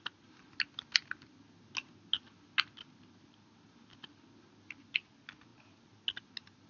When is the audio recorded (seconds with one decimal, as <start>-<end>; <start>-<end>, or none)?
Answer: 0.0-6.7